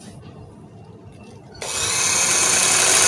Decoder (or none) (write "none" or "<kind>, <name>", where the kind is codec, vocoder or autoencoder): none